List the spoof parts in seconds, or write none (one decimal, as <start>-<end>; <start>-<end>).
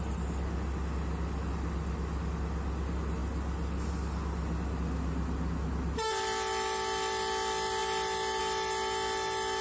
none